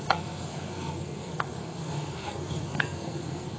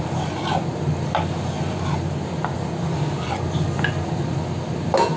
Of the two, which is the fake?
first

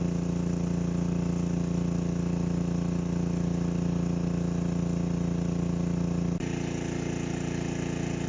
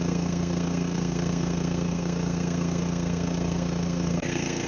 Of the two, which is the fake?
second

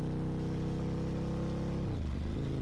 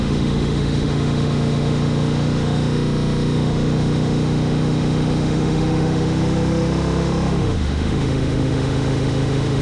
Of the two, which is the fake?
second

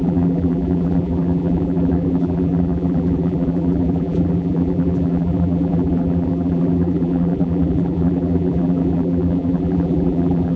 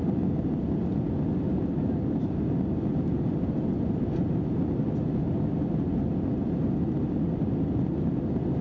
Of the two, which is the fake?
first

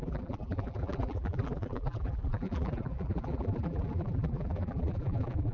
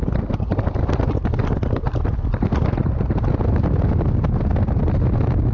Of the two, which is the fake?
first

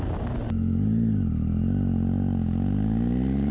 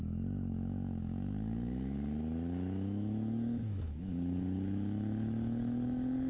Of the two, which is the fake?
second